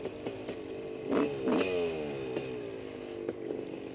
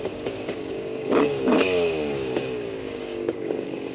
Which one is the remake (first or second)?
second